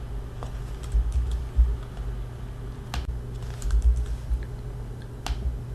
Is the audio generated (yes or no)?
no